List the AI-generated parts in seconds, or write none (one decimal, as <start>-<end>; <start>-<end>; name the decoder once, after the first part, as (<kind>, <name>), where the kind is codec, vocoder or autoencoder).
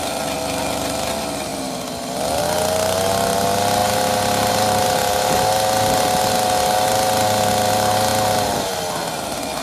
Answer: none